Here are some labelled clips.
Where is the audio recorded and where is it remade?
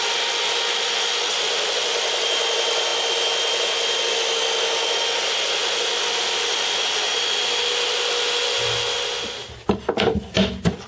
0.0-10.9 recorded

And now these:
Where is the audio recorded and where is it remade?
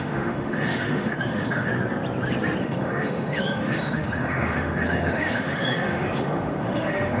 0.0-1.7 remade; 1.7-2.6 recorded; 2.6-7.2 remade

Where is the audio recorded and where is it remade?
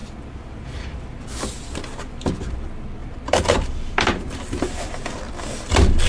0.0-1.4 remade; 1.4-3.0 recorded; 3.0-4.9 remade; 4.9-6.1 recorded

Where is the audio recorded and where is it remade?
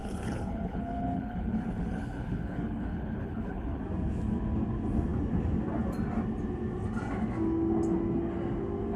0.0-3.8 remade; 3.8-9.0 recorded